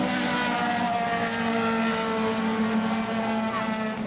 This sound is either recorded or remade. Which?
recorded